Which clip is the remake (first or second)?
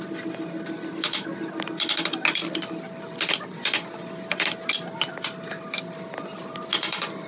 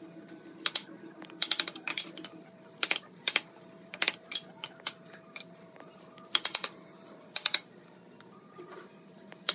second